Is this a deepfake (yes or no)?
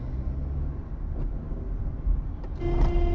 no